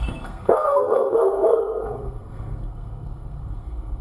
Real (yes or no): no